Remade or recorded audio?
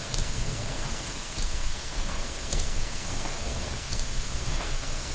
remade